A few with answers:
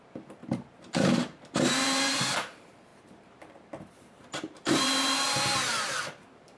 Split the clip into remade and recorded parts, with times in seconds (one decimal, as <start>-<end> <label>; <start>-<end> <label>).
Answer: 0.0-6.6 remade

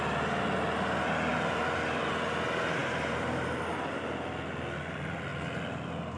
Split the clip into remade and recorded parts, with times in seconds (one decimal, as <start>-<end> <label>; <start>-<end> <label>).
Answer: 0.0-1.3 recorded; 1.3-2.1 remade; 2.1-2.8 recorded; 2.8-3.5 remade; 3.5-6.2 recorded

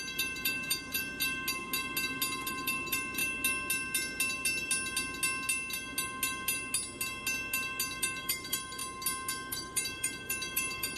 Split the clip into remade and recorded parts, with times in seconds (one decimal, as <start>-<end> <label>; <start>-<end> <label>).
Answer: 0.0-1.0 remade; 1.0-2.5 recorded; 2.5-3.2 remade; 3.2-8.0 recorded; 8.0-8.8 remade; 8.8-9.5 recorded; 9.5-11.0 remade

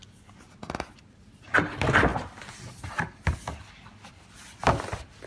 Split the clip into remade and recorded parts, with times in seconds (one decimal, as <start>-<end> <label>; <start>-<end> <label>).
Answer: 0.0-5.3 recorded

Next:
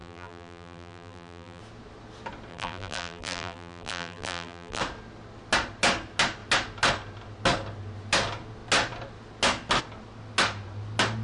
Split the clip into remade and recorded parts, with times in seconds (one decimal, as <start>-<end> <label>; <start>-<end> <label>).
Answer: 0.0-1.6 remade; 1.6-2.5 recorded; 2.5-4.8 remade; 4.8-11.2 recorded